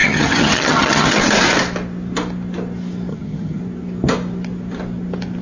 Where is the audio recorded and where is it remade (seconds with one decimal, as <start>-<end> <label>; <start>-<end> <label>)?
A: 0.0-1.2 remade; 1.2-3.1 recorded; 3.1-3.6 remade; 3.6-5.4 recorded